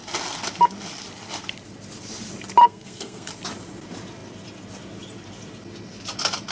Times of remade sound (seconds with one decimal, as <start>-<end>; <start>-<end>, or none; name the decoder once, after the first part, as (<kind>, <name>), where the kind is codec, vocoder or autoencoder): 2.6-3.3 (codec, SNAC)